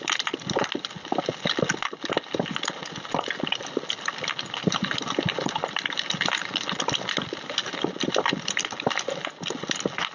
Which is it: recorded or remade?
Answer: recorded